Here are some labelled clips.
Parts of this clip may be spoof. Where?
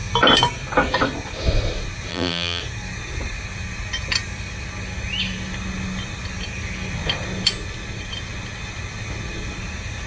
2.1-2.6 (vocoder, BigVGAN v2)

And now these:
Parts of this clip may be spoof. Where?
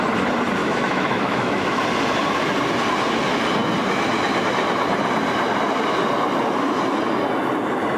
0.6-1.8 (autoencoder, DAC-VAE)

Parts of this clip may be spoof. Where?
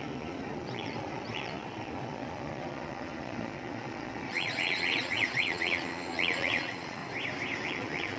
0.0-7.0 (vocoder, Vocos); 7.6-8.2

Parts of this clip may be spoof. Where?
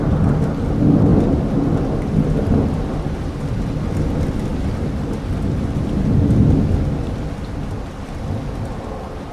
none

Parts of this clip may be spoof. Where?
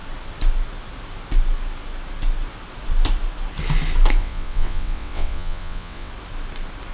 4.2-6.1 (vocoder, WaveNeXt)